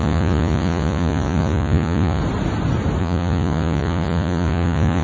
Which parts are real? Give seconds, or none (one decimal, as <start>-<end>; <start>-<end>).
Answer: 2.2-3.0